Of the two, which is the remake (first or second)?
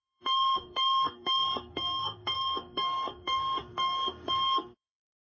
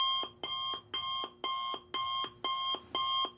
first